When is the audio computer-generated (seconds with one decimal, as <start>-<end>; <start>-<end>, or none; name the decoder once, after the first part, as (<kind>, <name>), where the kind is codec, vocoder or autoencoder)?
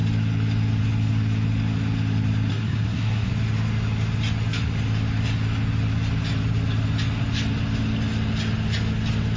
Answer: 2.5-3.3 (codec, SNAC)